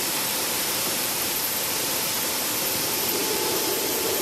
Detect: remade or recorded remade